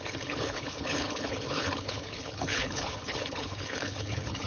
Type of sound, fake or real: fake